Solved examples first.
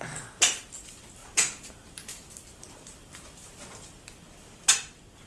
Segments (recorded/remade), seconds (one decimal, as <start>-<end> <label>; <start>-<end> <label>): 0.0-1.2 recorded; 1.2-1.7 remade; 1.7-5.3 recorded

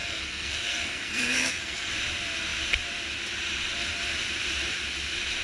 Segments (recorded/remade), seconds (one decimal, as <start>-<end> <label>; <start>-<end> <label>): 0.0-1.9 remade; 1.9-5.4 recorded

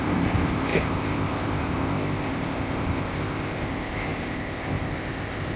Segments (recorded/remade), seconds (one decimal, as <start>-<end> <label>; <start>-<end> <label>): 0.0-5.6 remade

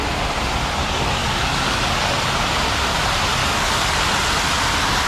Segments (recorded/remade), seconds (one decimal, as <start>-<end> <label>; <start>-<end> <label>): 0.0-0.8 recorded; 0.8-2.1 remade; 2.1-3.4 recorded; 3.4-3.9 remade; 3.9-5.1 recorded

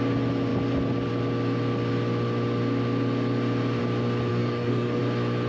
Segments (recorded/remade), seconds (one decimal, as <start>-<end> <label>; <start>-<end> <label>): 0.0-4.3 recorded; 4.3-5.0 remade; 5.0-5.5 recorded

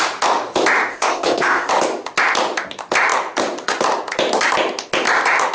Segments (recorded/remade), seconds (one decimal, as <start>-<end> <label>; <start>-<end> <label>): 0.0-0.9 recorded; 0.9-1.7 remade; 1.7-5.5 recorded